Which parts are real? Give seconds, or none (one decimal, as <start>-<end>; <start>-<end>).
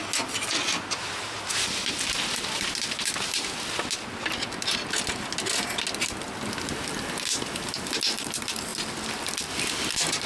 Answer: 0.0-10.3